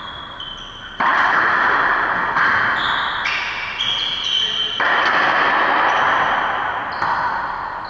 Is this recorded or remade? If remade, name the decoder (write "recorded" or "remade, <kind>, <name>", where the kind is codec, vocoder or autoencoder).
recorded